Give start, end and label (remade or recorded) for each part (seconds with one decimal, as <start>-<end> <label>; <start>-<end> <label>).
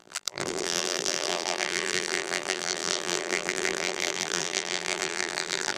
0.0-5.8 remade